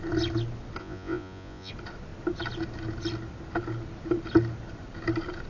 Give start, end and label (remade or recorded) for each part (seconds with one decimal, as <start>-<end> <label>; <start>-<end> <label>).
0.0-0.8 recorded; 0.8-1.7 remade; 1.7-5.5 recorded